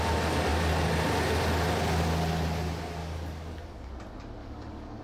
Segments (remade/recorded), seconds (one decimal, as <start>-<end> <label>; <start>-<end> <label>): 0.0-3.0 recorded; 3.0-3.9 remade; 3.9-4.4 recorded; 4.4-5.0 remade